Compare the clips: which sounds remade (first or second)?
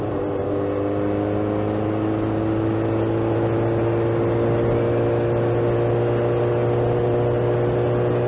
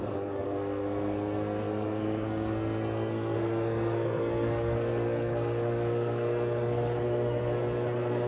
second